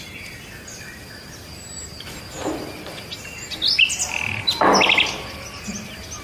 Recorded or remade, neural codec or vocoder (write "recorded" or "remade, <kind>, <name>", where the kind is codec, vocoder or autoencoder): recorded